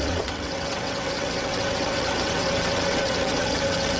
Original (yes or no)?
no